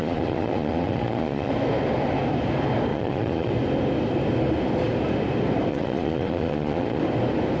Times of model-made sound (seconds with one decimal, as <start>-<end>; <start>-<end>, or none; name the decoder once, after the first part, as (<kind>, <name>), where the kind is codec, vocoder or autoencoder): 0.0-1.5 (vocoder, Vocos); 2.9-3.5; 5.7-7.0